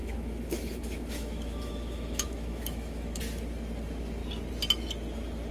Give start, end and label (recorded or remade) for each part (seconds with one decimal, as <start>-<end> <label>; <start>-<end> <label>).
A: 0.0-3.2 remade; 3.2-5.5 recorded